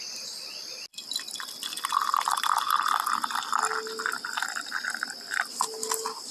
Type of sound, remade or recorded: recorded